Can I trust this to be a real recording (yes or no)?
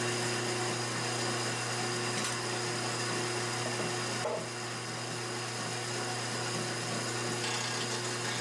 yes